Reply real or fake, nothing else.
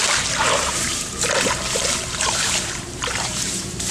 fake